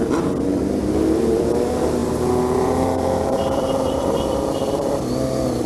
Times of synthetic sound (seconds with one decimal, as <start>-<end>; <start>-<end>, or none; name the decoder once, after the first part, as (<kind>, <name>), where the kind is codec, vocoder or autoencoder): 0.5-1.6 (vocoder, BigVGAN v2); 2.0-5.0